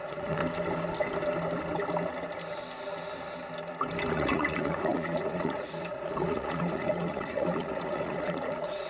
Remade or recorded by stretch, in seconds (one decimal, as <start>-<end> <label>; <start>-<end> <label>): 0.0-0.4 remade; 0.4-4.1 recorded; 4.1-8.9 remade